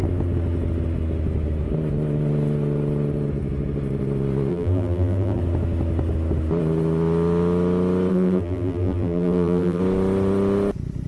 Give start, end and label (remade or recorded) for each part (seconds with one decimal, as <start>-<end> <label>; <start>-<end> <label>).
0.0-4.5 recorded; 4.5-5.4 remade; 5.4-8.1 recorded; 8.1-9.8 remade; 9.8-11.1 recorded